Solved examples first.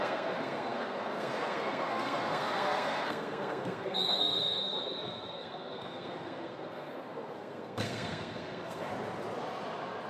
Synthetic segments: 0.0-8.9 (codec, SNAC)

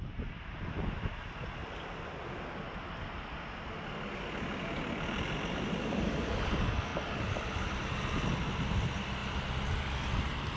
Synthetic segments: 0.0-1.6 (vocoder, BigVGAN v2); 4.2-9.2; 9.8-10.6